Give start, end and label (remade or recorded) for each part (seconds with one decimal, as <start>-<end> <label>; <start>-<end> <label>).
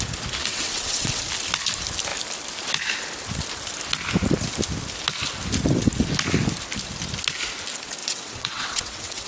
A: 0.0-0.4 recorded; 0.4-1.2 remade; 1.2-8.0 recorded; 8.0-9.3 remade